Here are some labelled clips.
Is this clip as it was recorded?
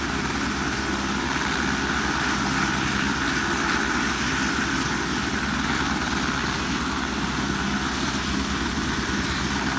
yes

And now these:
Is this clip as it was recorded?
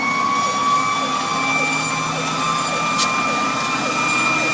yes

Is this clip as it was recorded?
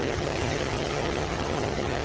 no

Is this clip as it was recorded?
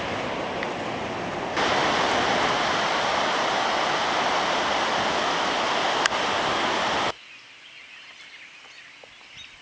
yes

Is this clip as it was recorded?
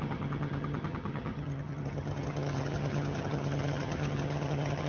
no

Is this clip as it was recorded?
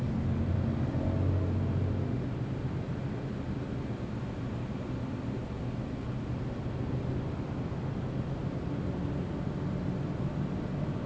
yes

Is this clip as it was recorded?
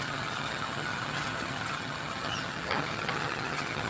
no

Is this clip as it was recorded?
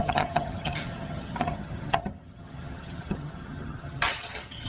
no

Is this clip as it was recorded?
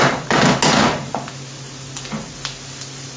yes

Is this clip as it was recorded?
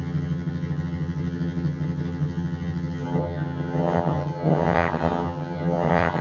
no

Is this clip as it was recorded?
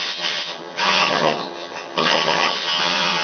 no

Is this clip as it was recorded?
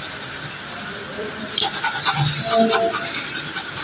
yes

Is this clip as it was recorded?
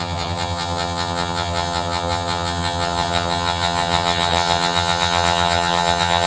no